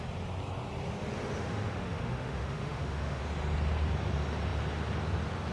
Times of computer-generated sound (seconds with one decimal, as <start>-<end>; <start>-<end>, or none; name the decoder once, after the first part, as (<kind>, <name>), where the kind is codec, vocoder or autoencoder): 1.4-3.2 (autoencoder, DAC-VAE)